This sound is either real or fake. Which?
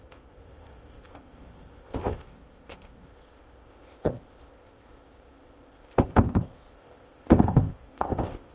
fake